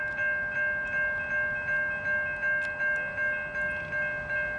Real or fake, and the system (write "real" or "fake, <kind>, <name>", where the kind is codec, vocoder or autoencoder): real